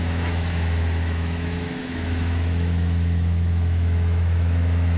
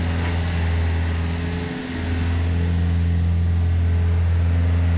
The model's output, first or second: first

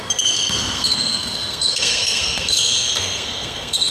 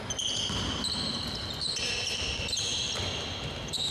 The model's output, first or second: first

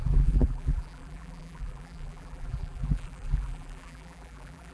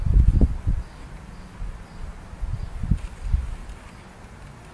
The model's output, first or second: first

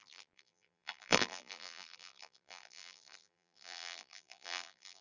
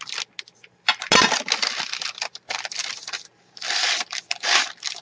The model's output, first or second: first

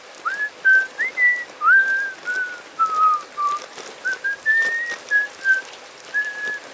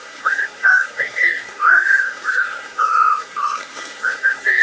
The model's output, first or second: second